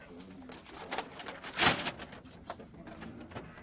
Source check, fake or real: real